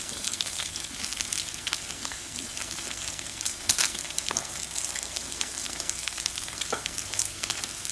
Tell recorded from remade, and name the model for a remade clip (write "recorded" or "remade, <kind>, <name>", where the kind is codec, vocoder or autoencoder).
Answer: remade, codec, SNAC